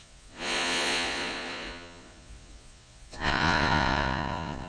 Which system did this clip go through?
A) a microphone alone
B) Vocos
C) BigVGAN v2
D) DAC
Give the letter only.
B